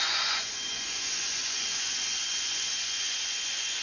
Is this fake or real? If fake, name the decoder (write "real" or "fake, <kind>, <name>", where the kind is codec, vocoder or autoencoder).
fake, vocoder, Vocos